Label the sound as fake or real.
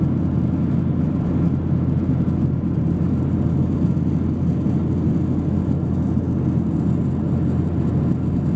real